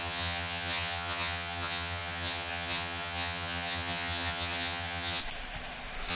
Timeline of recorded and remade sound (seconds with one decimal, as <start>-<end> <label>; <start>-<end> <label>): 0.0-5.2 remade; 5.2-6.1 recorded